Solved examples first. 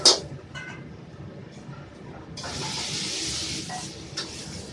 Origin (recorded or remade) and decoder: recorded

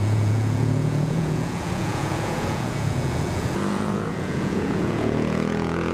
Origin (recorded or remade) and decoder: remade, vocoder, Vocos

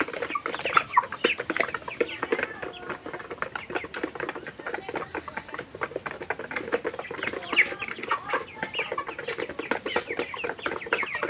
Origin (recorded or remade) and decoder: recorded